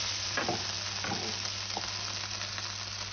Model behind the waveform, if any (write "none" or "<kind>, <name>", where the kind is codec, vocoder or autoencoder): none